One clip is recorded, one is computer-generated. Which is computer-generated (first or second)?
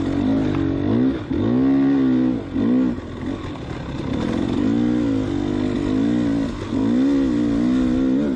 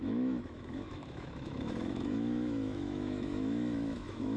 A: second